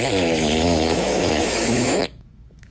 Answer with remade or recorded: remade